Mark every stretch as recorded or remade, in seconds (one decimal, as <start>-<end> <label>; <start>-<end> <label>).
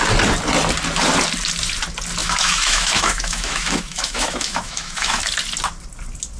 0.0-2.2 recorded; 2.2-5.2 remade; 5.2-6.4 recorded